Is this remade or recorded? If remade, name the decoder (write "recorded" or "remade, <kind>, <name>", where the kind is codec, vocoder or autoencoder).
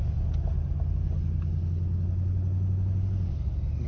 recorded